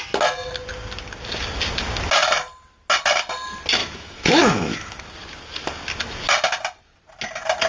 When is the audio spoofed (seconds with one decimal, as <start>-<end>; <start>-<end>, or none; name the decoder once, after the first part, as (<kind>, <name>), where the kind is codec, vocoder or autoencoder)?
3.8-5.0 (autoencoder, DAC-VAE)